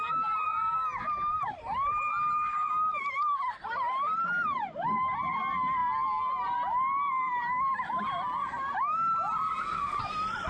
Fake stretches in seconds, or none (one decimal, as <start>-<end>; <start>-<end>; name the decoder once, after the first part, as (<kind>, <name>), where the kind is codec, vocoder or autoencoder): none